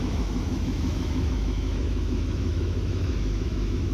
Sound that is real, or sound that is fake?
fake